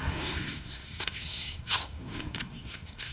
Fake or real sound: fake